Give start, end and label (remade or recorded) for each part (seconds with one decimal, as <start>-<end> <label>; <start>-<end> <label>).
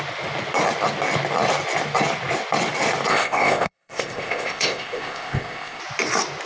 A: 0.0-3.1 recorded; 3.1-5.8 remade; 5.8-6.5 recorded